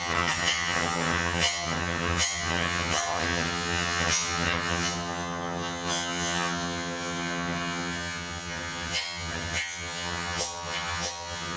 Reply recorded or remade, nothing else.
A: remade